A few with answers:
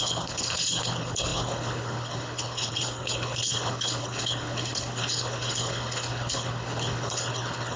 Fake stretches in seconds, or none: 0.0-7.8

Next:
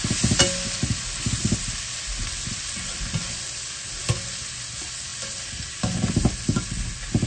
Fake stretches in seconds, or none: none

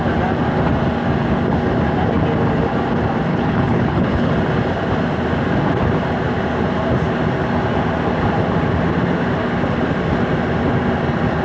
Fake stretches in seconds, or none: 3.3-4.3

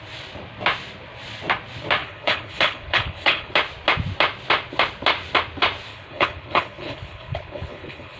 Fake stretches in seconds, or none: 2.0-3.5; 5.9-8.2

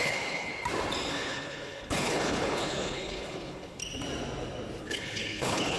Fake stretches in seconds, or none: 0.0-0.5; 1.1-3.8; 4.8-5.8

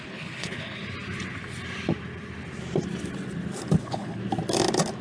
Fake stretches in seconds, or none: 0.0-0.8; 3.8-4.2